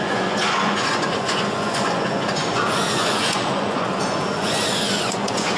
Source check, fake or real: fake